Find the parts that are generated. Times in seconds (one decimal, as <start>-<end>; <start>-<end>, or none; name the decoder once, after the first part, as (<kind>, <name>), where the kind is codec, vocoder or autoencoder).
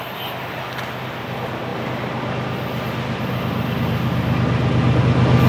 none